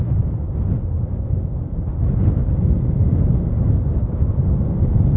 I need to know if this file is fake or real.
real